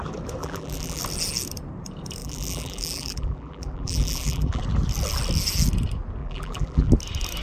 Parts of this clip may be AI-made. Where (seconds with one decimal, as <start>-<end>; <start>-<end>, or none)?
0.4-1.0; 2.2-4.6; 6.2-6.9